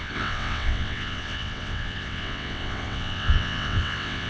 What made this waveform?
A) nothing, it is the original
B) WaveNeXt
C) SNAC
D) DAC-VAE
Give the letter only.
B